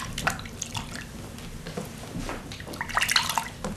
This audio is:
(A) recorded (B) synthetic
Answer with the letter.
A